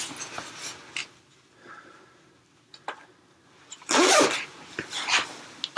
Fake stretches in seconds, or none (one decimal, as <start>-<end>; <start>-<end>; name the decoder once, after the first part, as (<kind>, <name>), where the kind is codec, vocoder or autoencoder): none